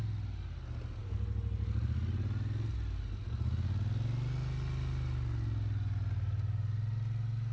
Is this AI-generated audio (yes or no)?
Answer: no